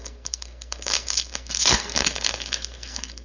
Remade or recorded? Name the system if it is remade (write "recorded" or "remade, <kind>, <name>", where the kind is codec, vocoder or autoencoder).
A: remade, codec, SNAC